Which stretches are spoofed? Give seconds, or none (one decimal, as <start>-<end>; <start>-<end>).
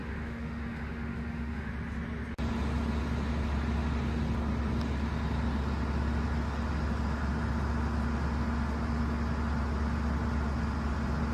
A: 0.0-1.7